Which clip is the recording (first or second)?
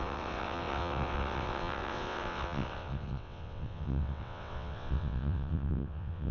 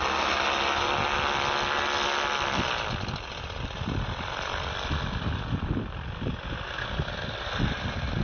second